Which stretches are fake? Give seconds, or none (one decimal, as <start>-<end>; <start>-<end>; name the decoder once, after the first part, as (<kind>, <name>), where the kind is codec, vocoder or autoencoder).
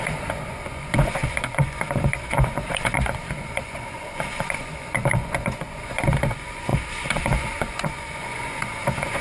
0.0-9.2 (vocoder, Vocos)